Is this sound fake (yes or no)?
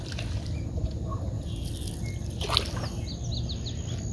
no